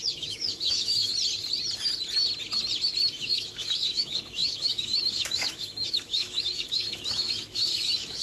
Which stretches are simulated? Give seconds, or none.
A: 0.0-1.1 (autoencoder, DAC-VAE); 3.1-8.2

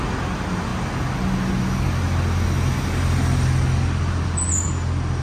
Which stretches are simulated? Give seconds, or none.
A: none